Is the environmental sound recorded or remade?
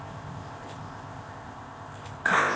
remade